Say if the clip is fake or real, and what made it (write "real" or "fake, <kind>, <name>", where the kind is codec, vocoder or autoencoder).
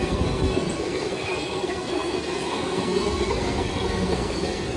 fake, codec, SNAC